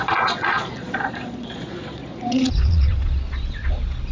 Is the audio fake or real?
fake